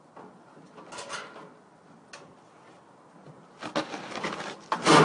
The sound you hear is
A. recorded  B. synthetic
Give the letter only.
A